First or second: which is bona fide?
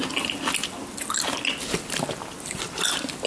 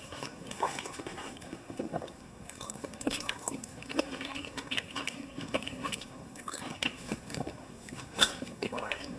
first